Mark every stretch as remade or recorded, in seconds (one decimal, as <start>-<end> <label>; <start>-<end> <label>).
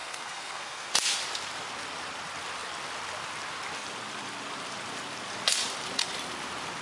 0.0-0.9 remade; 0.9-6.8 recorded